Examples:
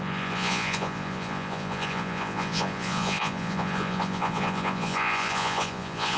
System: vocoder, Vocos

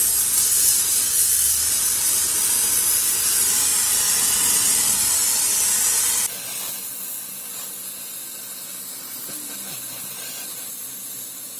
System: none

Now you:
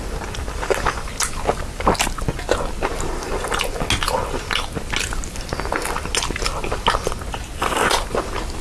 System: none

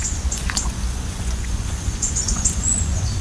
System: vocoder, Vocos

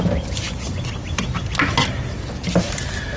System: none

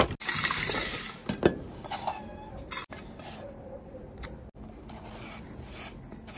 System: none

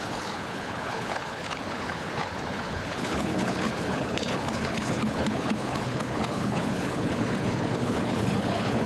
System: codec, HILCodec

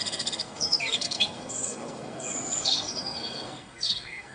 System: codec, SNAC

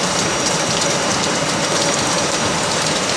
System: vocoder, BigVGAN v2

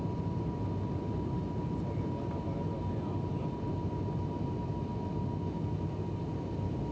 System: none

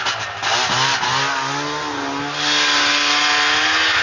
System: none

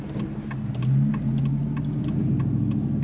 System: none